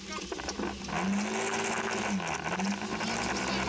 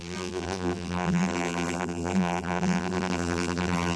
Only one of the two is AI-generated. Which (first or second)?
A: second